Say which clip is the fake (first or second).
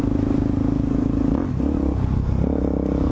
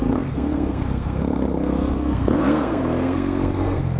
second